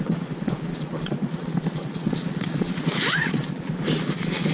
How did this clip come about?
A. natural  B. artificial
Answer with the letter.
B